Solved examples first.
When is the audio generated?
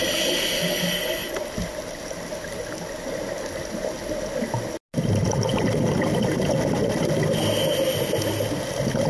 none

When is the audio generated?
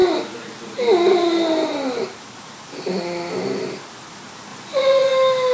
4.5-5.1 (vocoder, Vocos)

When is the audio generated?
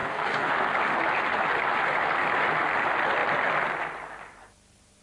0.0-0.5 (codec, SNAC)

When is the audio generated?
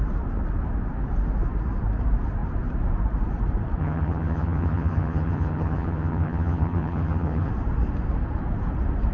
3.8-7.5 (vocoder, HiFi-GAN)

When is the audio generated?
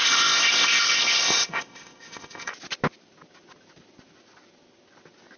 0.0-2.5 (codec, ZipCodec)